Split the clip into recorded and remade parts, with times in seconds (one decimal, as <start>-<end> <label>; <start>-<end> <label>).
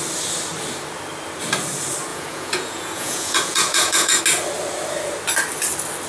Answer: 0.0-2.1 recorded; 2.1-4.2 remade; 4.2-6.1 recorded